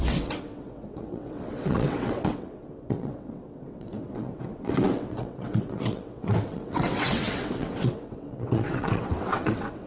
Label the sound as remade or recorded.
remade